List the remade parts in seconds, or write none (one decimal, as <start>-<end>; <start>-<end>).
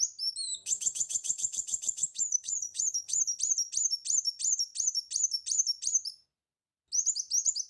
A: 0.5-3.4